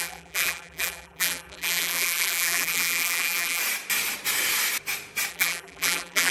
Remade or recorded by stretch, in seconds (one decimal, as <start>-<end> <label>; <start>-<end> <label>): 0.0-3.6 remade; 3.6-5.3 recorded; 5.3-6.3 remade